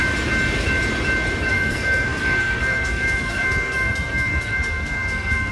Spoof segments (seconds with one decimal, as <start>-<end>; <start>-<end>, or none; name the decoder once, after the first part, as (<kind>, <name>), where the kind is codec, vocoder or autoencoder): 1.5-5.5 (codec, SNAC)